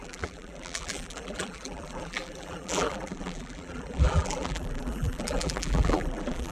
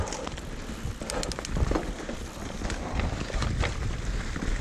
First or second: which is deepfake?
first